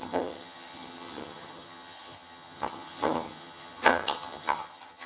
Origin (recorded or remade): remade